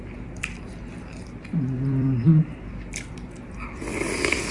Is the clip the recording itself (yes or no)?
no